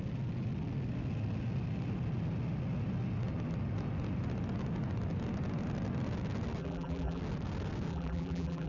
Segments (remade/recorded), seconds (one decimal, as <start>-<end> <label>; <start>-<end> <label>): 0.0-6.6 recorded; 6.6-7.2 remade; 7.2-7.9 recorded; 7.9-8.7 remade